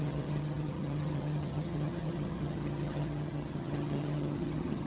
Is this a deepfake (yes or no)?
yes